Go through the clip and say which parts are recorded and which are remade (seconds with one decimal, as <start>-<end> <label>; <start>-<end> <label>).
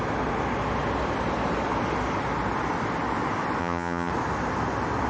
0.0-3.6 recorded; 3.6-4.1 remade; 4.1-5.1 recorded